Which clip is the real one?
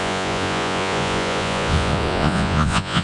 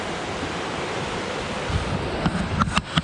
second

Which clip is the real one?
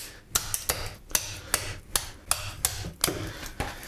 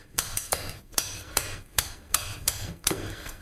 first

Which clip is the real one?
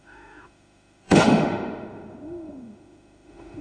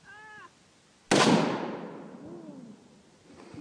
second